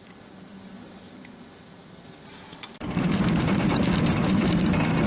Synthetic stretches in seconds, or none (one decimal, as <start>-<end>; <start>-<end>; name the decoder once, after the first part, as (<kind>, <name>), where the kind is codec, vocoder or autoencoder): 0.0-5.1 (vocoder, BigVGAN v2)